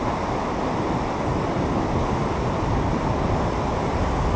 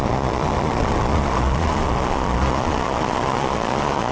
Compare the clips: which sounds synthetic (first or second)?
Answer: second